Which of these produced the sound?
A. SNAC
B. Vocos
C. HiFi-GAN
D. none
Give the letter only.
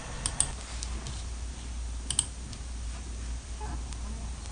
D